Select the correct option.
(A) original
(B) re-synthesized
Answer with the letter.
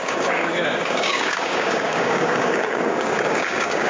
B